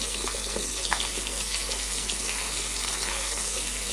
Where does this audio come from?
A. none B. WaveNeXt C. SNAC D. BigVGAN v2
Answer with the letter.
C